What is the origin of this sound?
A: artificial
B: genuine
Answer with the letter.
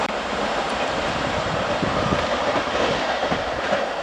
A